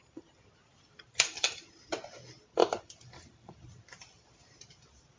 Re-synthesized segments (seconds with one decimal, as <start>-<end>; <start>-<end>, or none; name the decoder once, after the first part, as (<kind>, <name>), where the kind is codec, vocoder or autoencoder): 0.7-1.9 (vocoder, BigVGAN v2); 2.6-3.5